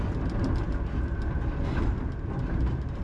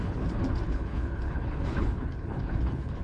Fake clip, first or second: second